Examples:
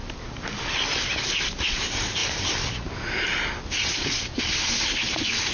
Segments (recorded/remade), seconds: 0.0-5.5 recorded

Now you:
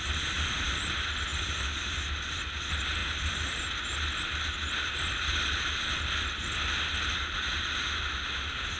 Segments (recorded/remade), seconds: 0.0-8.8 recorded

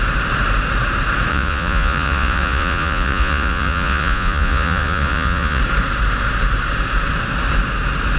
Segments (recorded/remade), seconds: 0.0-1.3 recorded; 1.3-5.6 remade; 5.6-8.2 recorded

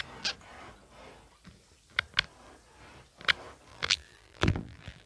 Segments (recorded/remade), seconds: 0.0-3.7 recorded; 3.7-5.1 remade

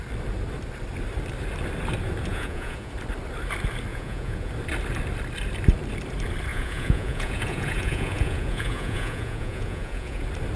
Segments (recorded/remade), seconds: 0.0-2.3 recorded; 2.3-2.9 remade; 2.9-3.9 recorded; 3.9-4.5 remade; 4.5-6.5 recorded; 6.5-10.2 remade; 10.2-10.6 recorded